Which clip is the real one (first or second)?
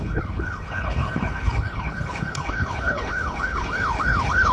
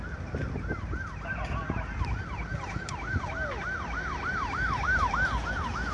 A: second